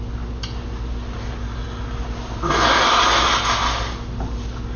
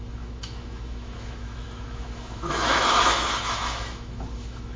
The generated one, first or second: second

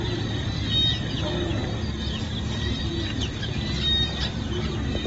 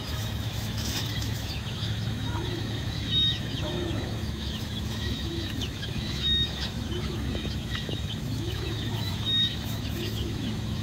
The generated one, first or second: second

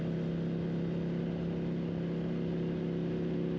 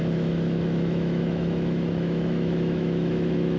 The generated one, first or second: second